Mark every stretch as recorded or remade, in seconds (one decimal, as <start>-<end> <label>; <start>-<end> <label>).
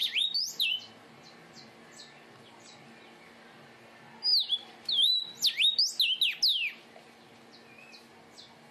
0.0-0.9 remade; 0.9-4.3 recorded; 4.3-5.8 remade; 5.8-8.7 recorded